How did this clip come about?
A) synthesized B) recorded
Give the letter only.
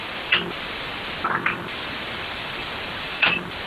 A